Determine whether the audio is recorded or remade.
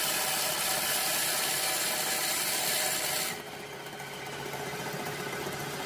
recorded